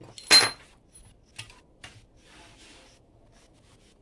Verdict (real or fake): real